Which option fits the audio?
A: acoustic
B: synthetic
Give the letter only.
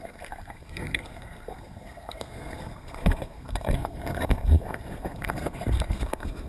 B